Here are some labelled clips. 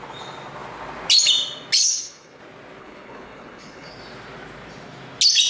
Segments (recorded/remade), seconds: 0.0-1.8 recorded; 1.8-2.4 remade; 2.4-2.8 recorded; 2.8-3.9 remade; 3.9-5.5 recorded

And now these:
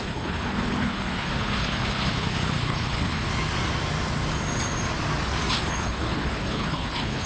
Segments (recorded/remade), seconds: 0.0-3.3 remade; 3.3-5.5 recorded; 5.5-7.3 remade

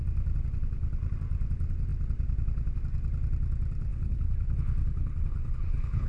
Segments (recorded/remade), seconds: 0.0-3.9 recorded; 3.9-6.1 remade

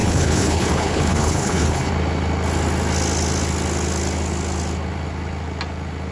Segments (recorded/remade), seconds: 0.0-1.9 remade; 1.9-6.1 recorded

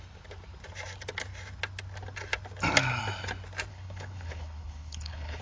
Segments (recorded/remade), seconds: 0.0-3.7 recorded; 3.7-5.4 remade

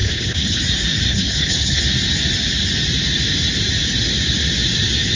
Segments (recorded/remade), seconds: 0.0-0.6 remade; 0.6-1.1 recorded; 1.1-1.8 remade; 1.8-5.2 recorded

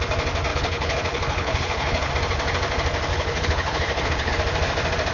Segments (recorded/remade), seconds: 0.0-0.5 recorded; 0.5-2.1 remade; 2.1-3.1 recorded; 3.1-4.3 remade; 4.3-5.1 recorded